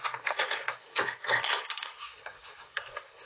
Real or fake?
fake